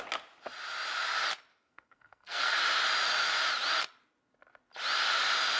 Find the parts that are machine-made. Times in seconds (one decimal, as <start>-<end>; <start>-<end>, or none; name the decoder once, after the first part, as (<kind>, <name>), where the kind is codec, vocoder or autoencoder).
1.5-2.6 (codec, SNAC)